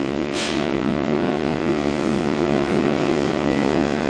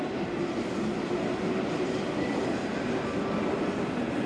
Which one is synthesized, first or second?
first